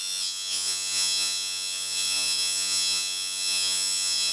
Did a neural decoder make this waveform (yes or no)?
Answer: yes